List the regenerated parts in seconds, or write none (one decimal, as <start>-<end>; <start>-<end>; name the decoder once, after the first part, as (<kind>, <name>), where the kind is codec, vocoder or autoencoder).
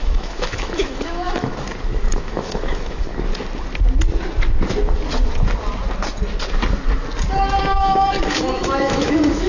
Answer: 0.0-1.5 (autoencoder, DAC-VAE); 2.2-3.1; 7.6-9.5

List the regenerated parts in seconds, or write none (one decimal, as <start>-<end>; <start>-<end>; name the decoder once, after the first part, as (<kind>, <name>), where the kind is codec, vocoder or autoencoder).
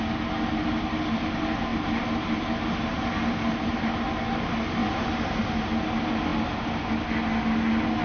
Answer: 1.7-3.9 (vocoder, BigVGAN v2); 4.8-5.4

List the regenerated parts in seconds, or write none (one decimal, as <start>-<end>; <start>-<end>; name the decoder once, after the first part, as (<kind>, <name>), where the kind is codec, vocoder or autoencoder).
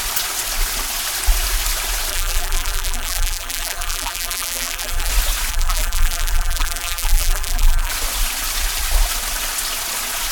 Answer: 2.1-5.1 (vocoder, BigVGAN v2); 5.5-7.9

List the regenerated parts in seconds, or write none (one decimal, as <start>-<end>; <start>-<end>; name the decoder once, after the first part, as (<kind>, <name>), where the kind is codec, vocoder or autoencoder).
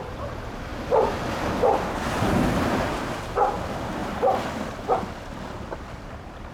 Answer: 0.0-0.7 (vocoder, BigVGAN v2); 2.2-6.5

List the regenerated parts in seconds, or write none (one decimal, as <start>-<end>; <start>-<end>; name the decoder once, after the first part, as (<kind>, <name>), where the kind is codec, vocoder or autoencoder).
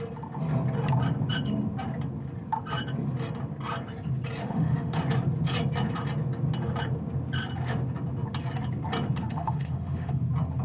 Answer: 4.4-5.0 (autoencoder, DAC-VAE); 9.2-10.2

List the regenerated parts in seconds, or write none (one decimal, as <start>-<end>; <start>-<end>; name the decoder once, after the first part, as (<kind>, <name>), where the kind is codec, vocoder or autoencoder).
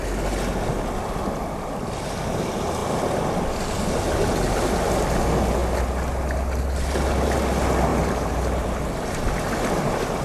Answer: 7.9-8.8 (vocoder, BigVGAN v2)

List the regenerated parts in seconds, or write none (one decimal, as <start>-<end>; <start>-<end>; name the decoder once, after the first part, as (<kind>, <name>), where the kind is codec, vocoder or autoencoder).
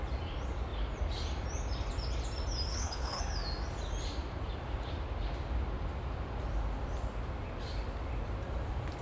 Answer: 2.7-3.2 (codec, HILCodec)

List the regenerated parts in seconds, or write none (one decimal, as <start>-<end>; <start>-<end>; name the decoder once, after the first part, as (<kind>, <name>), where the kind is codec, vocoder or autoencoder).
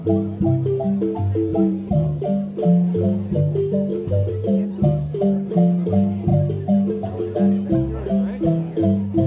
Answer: 1.5-2.2 (vocoder, BigVGAN v2); 3.9-5.5; 6.3-7.1